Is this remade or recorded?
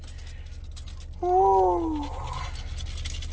recorded